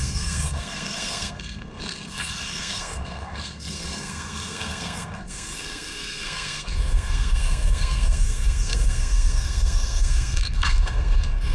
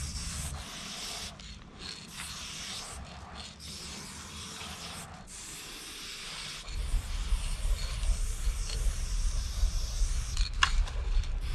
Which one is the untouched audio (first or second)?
second